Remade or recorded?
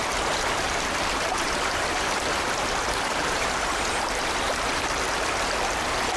remade